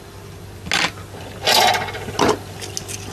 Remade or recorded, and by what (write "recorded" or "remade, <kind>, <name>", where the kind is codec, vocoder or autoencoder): recorded